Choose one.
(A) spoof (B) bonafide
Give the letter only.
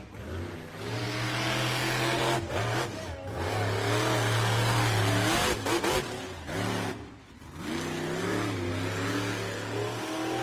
B